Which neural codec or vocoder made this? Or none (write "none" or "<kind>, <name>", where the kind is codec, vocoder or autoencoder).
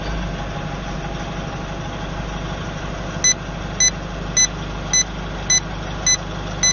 none